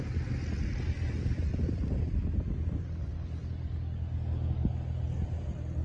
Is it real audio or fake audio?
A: real